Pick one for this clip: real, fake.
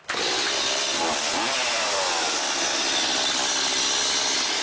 real